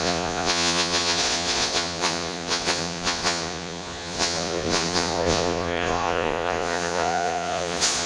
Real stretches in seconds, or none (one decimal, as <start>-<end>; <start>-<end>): none